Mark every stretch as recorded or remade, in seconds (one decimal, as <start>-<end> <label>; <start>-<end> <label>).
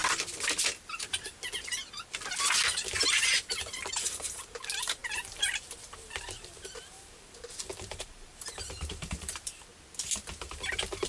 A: 0.0-3.9 recorded; 3.9-9.7 remade; 9.7-10.5 recorded; 10.5-11.1 remade